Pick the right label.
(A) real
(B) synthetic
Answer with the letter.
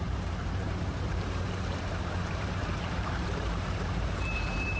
B